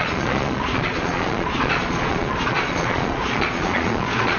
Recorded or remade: remade